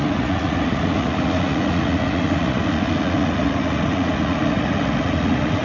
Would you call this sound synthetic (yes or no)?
yes